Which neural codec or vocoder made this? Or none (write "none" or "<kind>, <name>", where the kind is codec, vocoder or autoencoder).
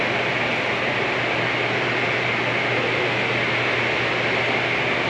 none